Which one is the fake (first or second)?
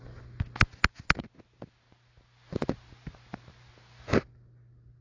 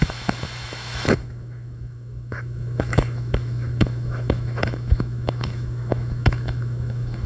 second